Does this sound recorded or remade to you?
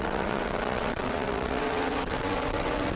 remade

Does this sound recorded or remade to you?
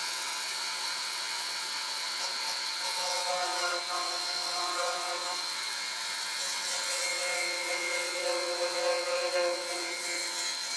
remade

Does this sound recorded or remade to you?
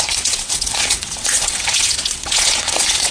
remade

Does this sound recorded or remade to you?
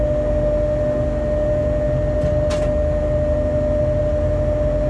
recorded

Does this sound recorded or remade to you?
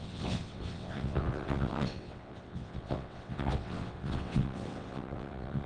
remade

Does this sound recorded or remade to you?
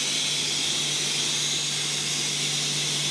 recorded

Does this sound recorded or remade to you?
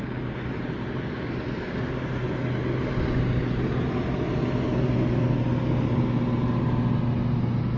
recorded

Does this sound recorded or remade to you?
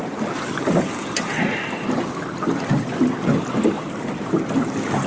recorded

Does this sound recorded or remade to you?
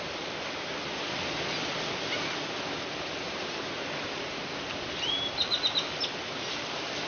recorded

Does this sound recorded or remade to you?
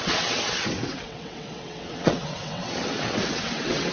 remade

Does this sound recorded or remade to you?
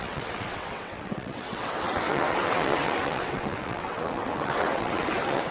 remade